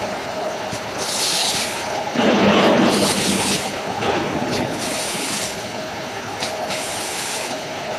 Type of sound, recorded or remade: remade